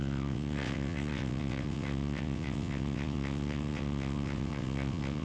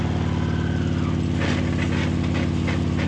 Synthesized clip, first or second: first